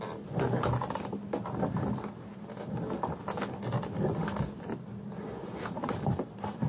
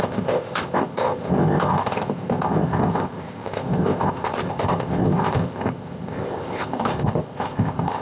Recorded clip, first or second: first